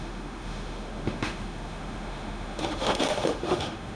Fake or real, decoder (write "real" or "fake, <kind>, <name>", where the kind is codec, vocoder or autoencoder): fake, autoencoder, DAC-VAE